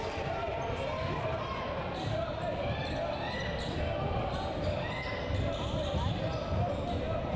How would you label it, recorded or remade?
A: recorded